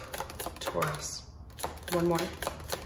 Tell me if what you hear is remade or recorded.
recorded